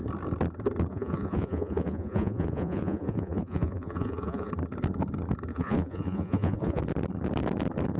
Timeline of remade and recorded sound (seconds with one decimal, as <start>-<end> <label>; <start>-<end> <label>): 0.0-0.9 recorded; 0.9-4.5 remade; 4.5-5.5 recorded; 5.5-6.8 remade; 6.8-8.0 recorded

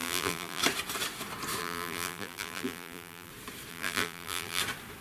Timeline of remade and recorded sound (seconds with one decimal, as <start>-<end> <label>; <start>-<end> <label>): 0.0-0.6 remade; 0.6-1.6 recorded; 1.6-3.3 remade; 3.3-3.7 recorded; 3.7-4.6 remade; 4.6-5.0 recorded

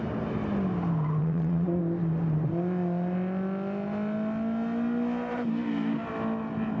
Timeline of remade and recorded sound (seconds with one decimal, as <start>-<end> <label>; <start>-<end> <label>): 0.0-1.2 recorded; 1.2-1.8 remade; 1.8-6.8 recorded

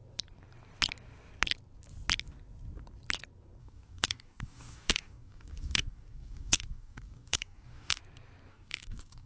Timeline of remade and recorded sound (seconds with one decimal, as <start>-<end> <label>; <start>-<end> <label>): 0.0-3.6 recorded; 3.6-8.0 remade; 8.0-8.5 recorded; 8.5-9.3 remade

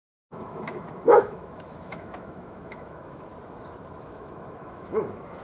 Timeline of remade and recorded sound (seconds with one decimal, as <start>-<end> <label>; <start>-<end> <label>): 0.0-3.3 remade; 3.3-4.0 recorded; 4.0-5.4 remade

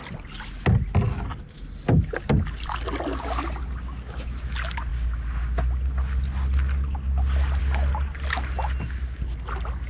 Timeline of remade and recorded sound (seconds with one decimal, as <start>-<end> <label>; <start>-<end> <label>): 0.0-9.9 recorded